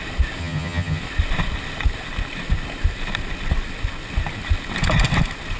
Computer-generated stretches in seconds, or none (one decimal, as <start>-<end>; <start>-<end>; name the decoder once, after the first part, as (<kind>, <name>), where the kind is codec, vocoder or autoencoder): 0.4-1.0 (vocoder, HiFi-GAN)